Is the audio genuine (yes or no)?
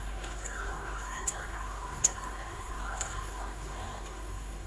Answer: no